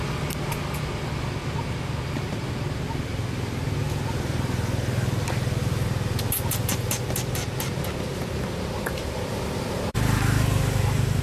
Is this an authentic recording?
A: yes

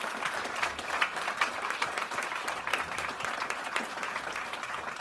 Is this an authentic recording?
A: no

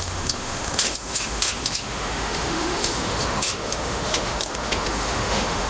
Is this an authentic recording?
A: no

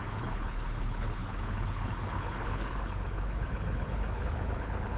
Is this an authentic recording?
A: no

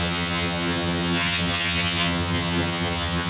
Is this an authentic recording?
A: no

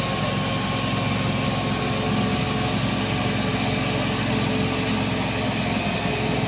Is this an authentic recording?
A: yes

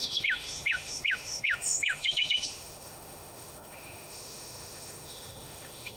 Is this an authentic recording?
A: no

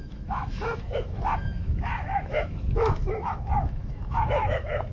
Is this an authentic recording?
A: no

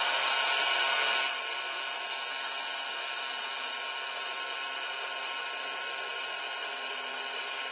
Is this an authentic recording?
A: yes